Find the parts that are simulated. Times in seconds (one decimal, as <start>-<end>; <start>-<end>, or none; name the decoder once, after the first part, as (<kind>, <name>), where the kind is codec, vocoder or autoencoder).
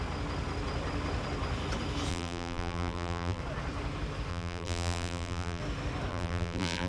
2.1-3.4 (vocoder, BigVGAN v2); 4.3-5.6; 6.1-6.9